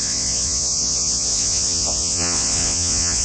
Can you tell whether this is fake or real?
fake